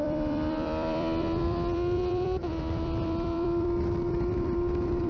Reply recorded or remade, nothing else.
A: remade